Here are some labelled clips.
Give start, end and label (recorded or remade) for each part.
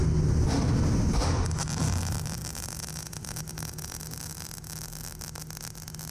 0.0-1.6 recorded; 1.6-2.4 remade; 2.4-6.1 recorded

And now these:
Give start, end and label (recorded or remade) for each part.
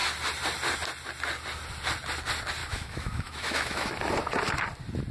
0.0-2.6 recorded; 2.6-3.9 remade; 3.9-5.1 recorded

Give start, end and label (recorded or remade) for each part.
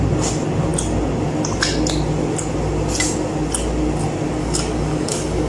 0.0-4.4 recorded; 4.4-5.5 remade